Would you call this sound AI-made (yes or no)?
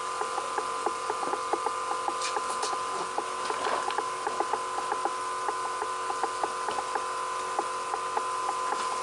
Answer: no